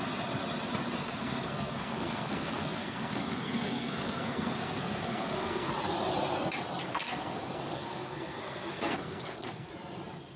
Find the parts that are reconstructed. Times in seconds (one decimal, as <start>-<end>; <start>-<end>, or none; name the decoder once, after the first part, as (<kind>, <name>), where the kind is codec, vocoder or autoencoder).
1.0-5.7 (codec, SNAC); 6.8-9.7